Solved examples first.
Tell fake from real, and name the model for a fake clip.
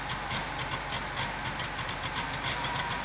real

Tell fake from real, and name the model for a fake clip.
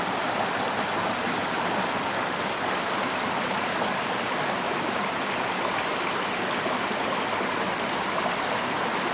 real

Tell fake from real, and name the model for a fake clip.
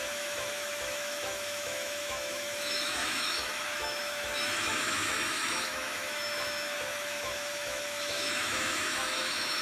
fake, autoencoder, DAC-VAE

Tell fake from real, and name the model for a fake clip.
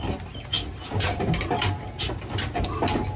real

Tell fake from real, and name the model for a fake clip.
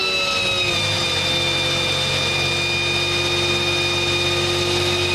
real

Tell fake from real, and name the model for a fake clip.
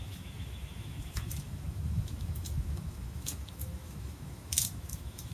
fake, autoencoder, DAC-VAE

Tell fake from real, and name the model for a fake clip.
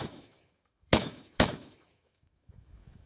fake, autoencoder, DAC-VAE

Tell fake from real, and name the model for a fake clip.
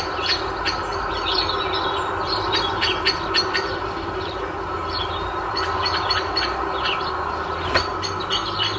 real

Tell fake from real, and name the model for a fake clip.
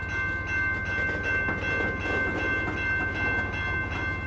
real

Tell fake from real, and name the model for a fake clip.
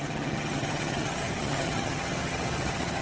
fake, vocoder, HiFi-GAN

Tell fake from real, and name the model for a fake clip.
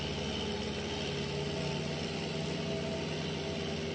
real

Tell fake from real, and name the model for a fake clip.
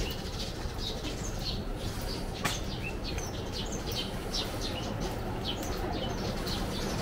real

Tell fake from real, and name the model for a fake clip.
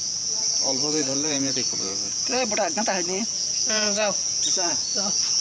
fake, vocoder, Vocos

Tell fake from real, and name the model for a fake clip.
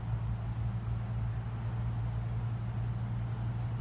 real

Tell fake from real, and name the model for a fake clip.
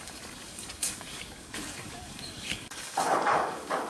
fake, codec, DAC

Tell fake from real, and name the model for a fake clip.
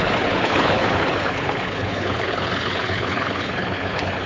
fake, codec, HILCodec